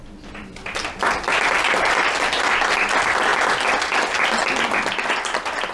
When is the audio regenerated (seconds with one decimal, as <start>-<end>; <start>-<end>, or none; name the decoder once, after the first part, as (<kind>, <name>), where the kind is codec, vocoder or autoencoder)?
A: none